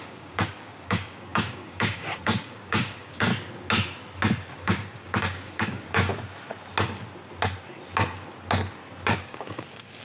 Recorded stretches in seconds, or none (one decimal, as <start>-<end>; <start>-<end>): 3.3-4.5; 6.1-9.2